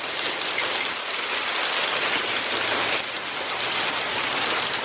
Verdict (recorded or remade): recorded